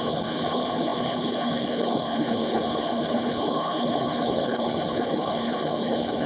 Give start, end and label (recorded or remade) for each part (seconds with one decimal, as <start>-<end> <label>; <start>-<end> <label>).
0.0-6.3 remade